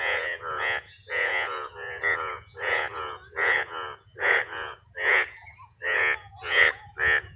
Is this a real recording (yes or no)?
no